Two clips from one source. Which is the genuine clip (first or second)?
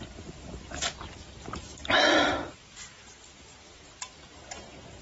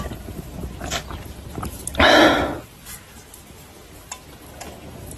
second